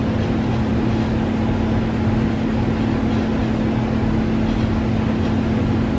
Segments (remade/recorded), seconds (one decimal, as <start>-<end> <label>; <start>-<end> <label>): 0.0-6.0 recorded